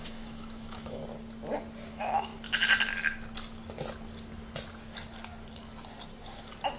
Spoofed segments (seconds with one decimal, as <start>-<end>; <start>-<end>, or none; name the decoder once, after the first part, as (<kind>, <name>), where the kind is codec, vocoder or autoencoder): 0.0-1.0 (autoencoder, DAC-VAE); 1.9-2.3